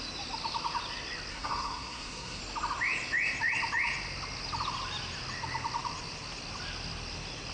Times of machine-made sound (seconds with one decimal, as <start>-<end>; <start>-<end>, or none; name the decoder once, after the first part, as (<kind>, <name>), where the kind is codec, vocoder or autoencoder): 1.3-2.4 (codec, SNAC)